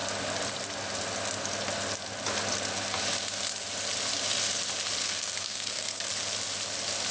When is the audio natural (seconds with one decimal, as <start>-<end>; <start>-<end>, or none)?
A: 0.0-5.0; 6.1-7.1